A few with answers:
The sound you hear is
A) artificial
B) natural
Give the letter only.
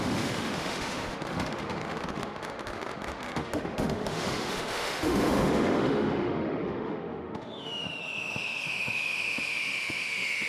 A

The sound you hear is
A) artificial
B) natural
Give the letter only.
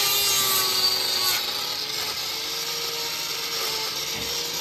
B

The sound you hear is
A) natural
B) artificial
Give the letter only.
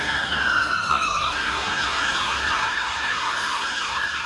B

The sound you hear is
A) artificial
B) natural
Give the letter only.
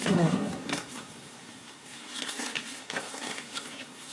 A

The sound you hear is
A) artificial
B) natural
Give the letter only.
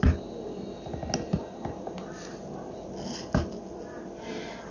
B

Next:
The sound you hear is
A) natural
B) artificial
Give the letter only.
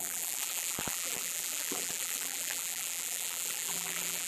B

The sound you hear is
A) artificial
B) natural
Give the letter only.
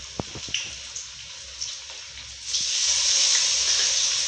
B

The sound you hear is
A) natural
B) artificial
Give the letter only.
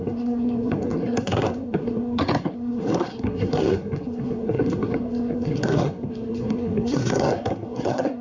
B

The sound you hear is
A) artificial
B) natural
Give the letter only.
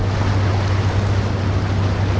B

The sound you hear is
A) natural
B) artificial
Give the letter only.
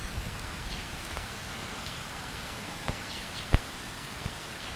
B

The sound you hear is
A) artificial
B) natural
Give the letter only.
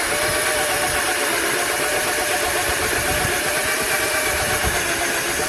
A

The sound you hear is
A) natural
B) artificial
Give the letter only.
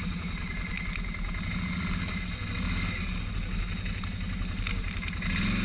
A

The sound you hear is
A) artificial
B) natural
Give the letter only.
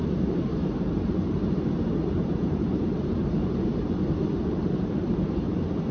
A